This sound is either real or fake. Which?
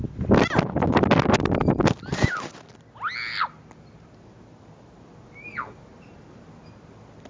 real